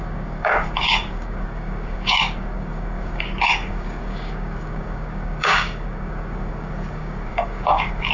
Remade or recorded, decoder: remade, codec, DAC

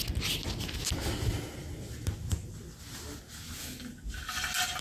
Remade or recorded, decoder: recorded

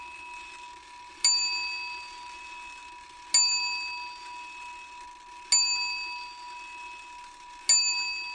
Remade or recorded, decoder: recorded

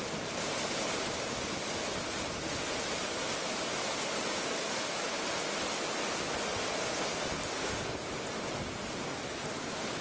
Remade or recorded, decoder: recorded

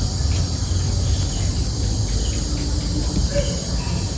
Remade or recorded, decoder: recorded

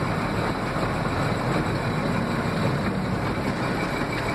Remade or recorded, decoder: recorded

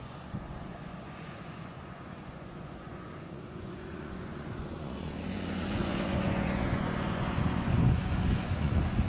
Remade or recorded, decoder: remade, vocoder, Vocos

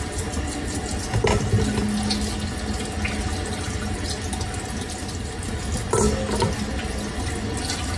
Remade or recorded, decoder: recorded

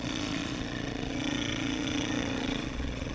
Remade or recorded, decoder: remade, vocoder, Vocos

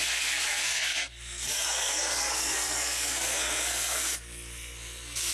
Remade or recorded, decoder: remade, codec, SNAC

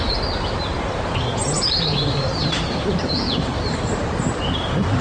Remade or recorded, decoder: remade, vocoder, BigVGAN v2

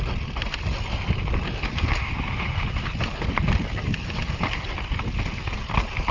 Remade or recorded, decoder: recorded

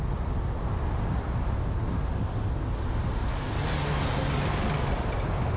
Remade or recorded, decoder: recorded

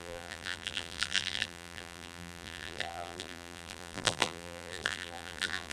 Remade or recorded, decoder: remade, vocoder, BigVGAN v2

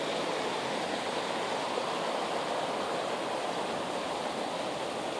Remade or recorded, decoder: recorded